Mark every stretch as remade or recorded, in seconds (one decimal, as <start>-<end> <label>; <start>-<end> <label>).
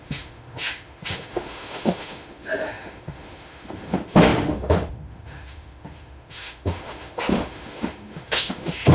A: 0.0-8.9 remade